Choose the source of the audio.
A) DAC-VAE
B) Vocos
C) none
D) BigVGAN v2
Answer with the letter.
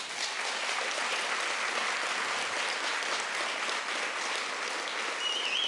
C